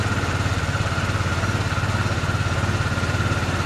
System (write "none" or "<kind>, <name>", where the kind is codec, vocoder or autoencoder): none